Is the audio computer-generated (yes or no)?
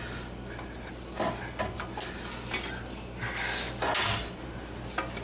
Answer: no